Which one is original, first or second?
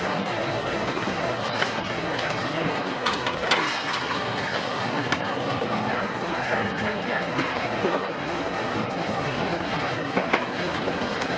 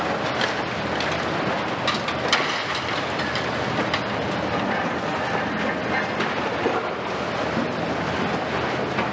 second